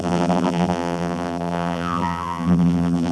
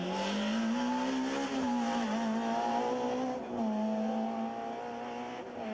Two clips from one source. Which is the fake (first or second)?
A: first